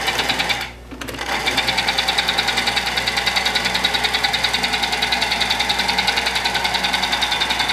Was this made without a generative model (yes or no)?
no